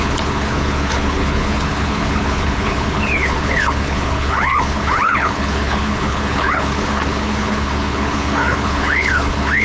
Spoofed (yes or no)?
yes